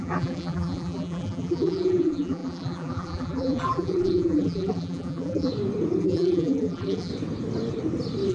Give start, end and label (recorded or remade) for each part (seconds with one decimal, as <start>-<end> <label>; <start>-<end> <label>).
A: 0.0-5.5 remade; 5.5-6.0 recorded; 6.0-7.1 remade; 7.1-8.3 recorded